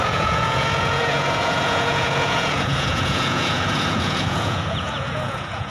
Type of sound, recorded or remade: remade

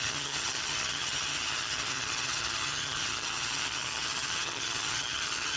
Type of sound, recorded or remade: remade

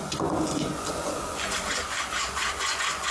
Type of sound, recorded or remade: remade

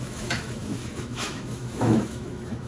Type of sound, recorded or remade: remade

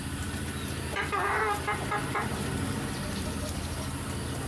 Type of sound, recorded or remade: recorded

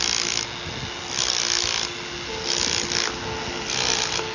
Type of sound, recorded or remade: recorded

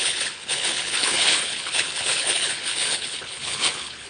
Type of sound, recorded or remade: remade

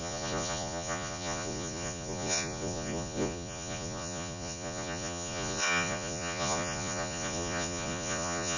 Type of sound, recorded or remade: remade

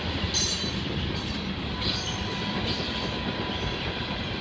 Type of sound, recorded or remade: recorded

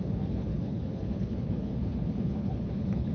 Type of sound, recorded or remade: remade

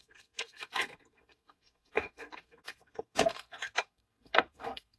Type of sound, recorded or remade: remade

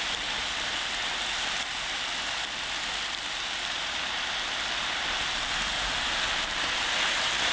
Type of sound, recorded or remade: recorded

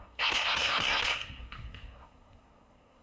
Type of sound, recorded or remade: remade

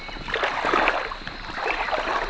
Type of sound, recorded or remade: recorded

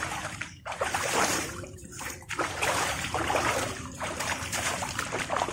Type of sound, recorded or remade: remade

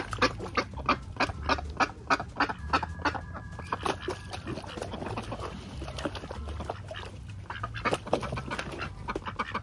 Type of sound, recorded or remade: recorded